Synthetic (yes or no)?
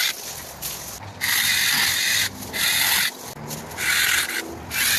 no